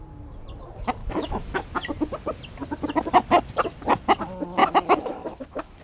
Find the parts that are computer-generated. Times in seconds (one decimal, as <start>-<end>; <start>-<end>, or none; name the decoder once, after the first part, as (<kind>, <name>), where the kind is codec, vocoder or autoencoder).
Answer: 1.0-1.6 (autoencoder, DAC-VAE); 4.6-5.8